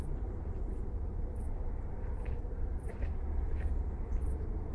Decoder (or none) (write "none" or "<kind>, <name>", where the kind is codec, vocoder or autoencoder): vocoder, BigVGAN v2